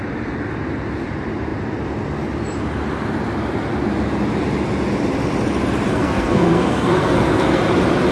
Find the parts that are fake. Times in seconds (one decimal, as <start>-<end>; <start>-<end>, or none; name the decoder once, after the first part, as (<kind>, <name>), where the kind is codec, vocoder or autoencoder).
5.9-7.6 (codec, SNAC)